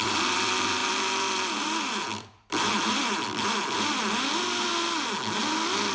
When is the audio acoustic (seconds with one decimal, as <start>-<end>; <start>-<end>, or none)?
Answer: 4.7-5.9